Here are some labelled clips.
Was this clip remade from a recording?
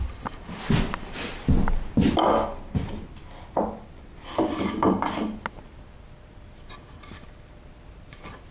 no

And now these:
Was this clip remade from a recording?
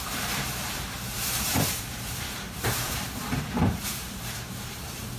yes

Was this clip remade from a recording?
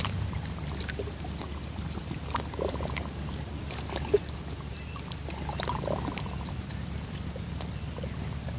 yes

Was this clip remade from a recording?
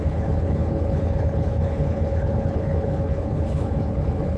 yes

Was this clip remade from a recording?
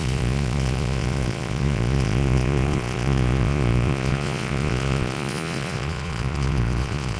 yes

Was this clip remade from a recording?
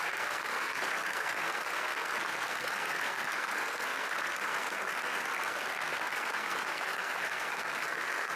yes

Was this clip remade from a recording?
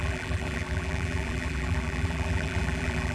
yes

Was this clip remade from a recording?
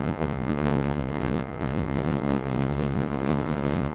yes